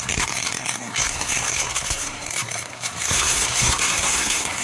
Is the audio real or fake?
fake